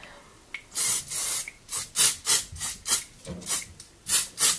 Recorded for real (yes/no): yes